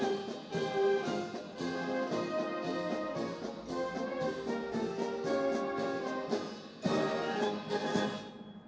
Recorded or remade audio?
recorded